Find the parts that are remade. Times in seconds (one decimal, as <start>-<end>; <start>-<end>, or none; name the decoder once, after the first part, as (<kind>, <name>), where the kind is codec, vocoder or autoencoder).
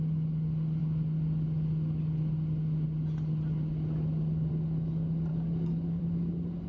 5.3-6.0 (codec, DAC)